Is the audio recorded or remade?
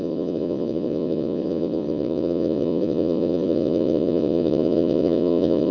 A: remade